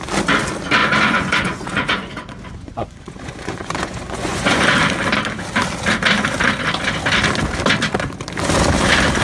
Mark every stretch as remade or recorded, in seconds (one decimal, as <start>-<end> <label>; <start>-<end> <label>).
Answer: 0.0-0.8 recorded; 0.8-4.6 remade; 4.6-9.2 recorded